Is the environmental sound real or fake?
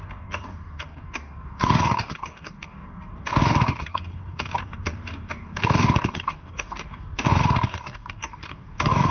fake